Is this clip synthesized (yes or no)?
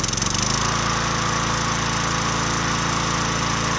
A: no